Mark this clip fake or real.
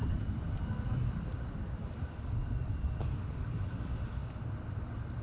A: real